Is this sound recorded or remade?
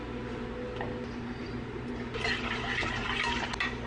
recorded